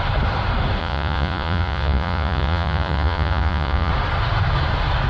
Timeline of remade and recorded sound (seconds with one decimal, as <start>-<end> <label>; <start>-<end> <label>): 0.0-0.8 recorded; 0.8-3.9 remade; 3.9-5.1 recorded